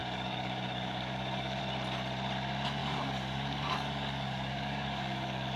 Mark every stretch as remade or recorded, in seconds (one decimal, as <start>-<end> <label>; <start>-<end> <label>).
0.0-1.6 remade; 1.6-2.8 recorded; 2.8-5.6 remade